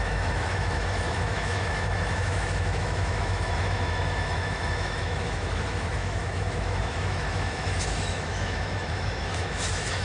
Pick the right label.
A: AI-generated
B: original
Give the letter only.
A